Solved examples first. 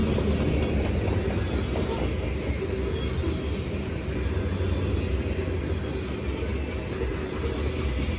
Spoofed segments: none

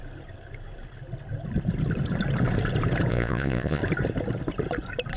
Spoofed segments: 3.1-3.8 (vocoder, Vocos)

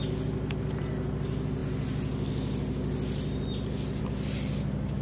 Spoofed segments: none

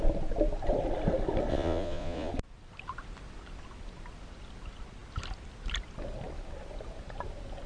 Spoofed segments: 1.5-2.3 (vocoder, Vocos)

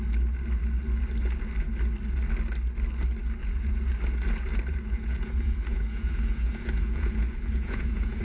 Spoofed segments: 3.4-3.9 (vocoder, Vocos); 4.7-8.2

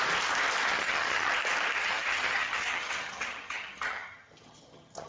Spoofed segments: 0.7-1.3 (vocoder, HiFi-GAN); 1.8-5.1